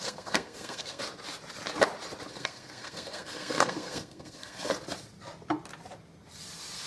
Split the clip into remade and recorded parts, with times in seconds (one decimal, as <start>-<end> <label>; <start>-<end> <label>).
0.0-1.0 remade; 1.0-2.3 recorded; 2.3-4.7 remade; 4.7-6.9 recorded

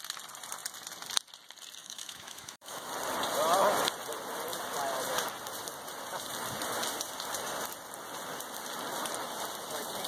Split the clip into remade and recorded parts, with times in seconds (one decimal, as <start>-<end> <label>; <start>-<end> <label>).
0.0-1.8 recorded; 1.8-2.9 remade; 2.9-10.1 recorded

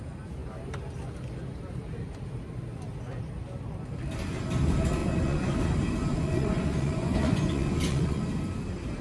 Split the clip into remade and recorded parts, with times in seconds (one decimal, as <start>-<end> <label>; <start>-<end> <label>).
0.0-5.0 recorded; 5.0-5.6 remade; 5.6-6.1 recorded; 6.1-8.2 remade; 8.2-9.0 recorded

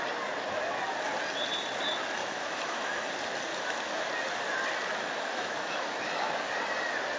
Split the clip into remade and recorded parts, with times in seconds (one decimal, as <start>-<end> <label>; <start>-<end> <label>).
0.0-2.2 recorded; 2.2-3.1 remade; 3.1-3.5 recorded; 3.5-4.1 remade; 4.1-4.9 recorded; 4.9-6.5 remade; 6.5-7.2 recorded

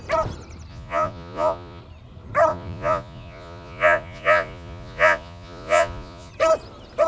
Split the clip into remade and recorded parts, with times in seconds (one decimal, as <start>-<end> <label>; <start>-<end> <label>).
0.0-0.7 recorded; 0.7-1.8 remade; 1.8-2.5 recorded; 2.5-6.3 remade; 6.3-7.1 recorded